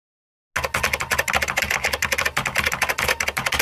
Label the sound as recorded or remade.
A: recorded